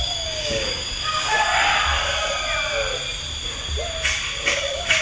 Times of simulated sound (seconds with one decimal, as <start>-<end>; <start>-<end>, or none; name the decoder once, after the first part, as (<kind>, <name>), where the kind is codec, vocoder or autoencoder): 0.0-1.5 (codec, DAC); 4.5-5.0